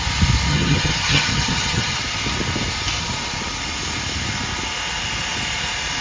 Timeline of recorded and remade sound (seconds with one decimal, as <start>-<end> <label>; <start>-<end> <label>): 0.0-0.5 recorded; 0.5-2.0 remade; 2.0-6.0 recorded